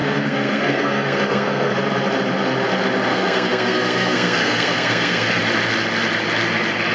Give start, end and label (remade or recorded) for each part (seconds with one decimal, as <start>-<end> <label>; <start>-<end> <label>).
0.0-1.7 remade; 1.7-3.1 recorded; 3.1-5.4 remade; 5.4-6.9 recorded